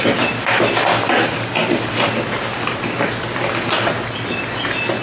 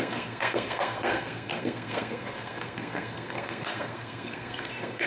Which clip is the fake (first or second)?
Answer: second